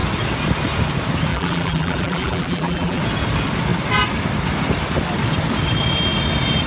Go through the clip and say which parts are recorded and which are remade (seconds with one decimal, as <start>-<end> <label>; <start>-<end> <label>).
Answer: 0.0-1.3 recorded; 1.3-3.0 remade; 3.0-6.7 recorded